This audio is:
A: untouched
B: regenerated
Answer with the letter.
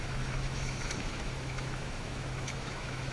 B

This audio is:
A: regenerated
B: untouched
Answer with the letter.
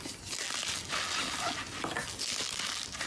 B